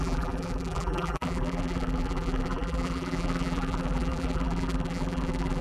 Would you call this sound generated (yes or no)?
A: yes